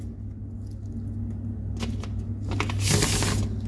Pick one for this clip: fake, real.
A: real